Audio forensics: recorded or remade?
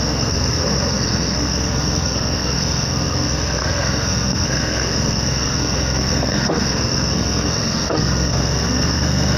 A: remade